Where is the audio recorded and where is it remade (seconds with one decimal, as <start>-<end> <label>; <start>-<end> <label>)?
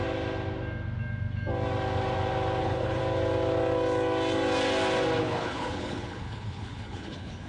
0.0-2.6 recorded; 2.6-3.0 remade; 3.0-5.2 recorded; 5.2-7.5 remade